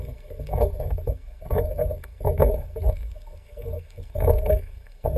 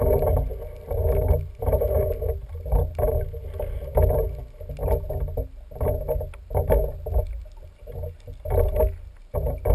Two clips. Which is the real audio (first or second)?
second